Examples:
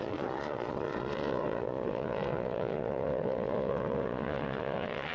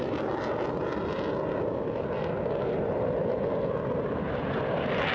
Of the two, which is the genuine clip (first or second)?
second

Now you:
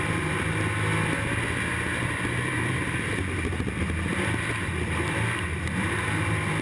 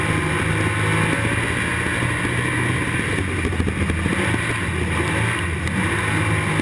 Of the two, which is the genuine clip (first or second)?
second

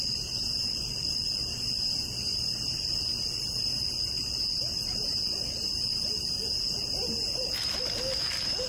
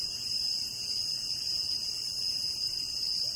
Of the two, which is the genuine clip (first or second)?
first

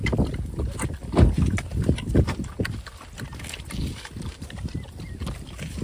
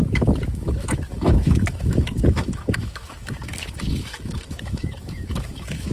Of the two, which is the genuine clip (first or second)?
first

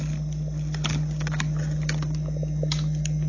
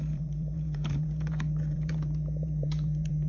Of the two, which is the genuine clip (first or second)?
first